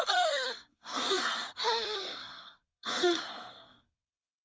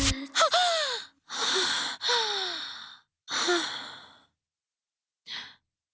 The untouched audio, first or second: second